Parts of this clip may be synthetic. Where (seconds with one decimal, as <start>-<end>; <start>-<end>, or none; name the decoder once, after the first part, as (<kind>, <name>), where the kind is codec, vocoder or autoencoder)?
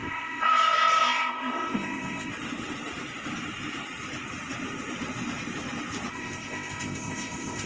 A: 0.0-2.3 (codec, ZipCodec); 6.1-7.7